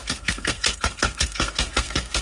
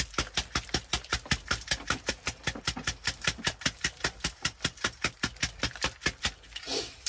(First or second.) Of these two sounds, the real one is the second